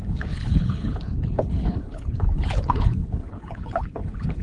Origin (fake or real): fake